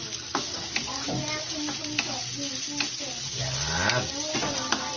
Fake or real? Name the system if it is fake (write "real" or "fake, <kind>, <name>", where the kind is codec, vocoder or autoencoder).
real